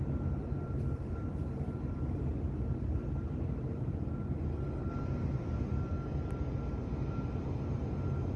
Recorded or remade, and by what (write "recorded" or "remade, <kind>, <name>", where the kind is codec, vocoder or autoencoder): recorded